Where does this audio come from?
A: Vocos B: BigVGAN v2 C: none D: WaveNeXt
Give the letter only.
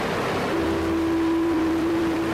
B